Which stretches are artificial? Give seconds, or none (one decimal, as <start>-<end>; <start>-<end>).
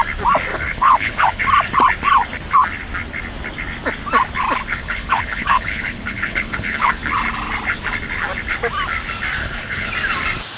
0.5-1.4; 4.8-6.9; 9.4-9.9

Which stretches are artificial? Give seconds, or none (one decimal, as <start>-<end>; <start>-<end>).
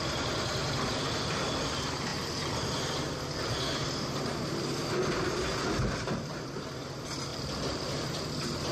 none